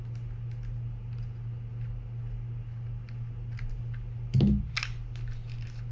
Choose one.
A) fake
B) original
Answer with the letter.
B